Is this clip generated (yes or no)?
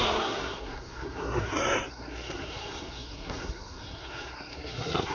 yes